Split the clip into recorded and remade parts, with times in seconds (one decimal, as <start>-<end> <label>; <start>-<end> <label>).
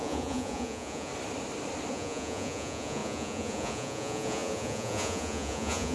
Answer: 0.0-1.1 remade; 1.1-1.9 recorded; 1.9-5.9 remade